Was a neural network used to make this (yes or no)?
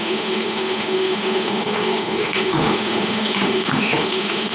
yes